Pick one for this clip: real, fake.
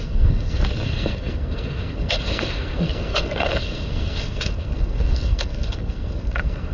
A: fake